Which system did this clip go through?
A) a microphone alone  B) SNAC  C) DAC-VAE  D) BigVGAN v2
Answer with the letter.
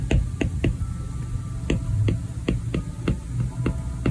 A